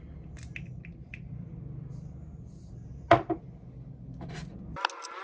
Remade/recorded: recorded